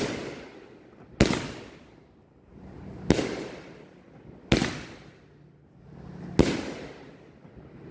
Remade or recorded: recorded